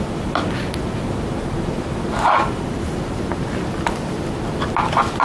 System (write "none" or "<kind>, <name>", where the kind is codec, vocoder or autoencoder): none